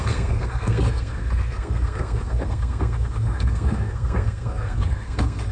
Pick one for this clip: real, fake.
fake